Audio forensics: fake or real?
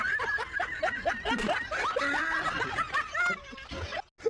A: real